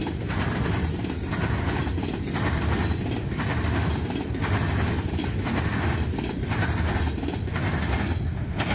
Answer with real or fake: real